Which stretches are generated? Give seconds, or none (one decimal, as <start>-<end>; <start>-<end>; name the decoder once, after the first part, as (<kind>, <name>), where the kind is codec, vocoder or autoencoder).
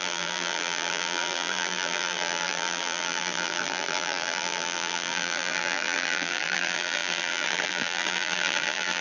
0.0-9.0 (vocoder, BigVGAN v2)